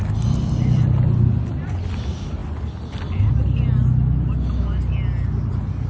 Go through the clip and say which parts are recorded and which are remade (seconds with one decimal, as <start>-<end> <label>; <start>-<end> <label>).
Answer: 0.0-5.9 recorded